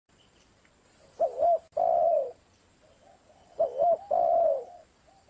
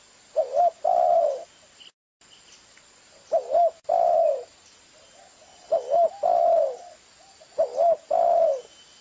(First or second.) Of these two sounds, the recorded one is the second